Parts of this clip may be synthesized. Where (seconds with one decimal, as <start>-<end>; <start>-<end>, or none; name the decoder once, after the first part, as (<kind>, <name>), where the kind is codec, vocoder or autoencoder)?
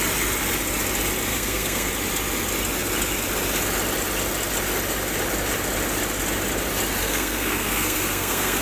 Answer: 1.3-1.9 (codec, SNAC); 7.0-8.6